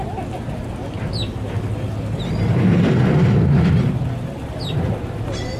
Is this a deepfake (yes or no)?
no